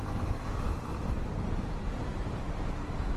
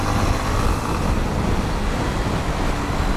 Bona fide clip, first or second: second